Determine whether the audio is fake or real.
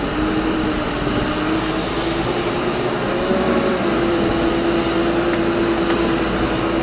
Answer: real